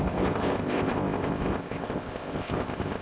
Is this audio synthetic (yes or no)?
yes